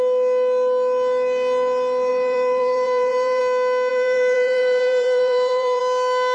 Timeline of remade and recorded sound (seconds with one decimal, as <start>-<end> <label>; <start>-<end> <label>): 0.0-2.1 recorded; 2.1-3.4 remade; 3.4-3.9 recorded; 3.9-5.8 remade; 5.8-6.3 recorded